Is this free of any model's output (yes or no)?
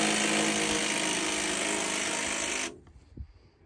yes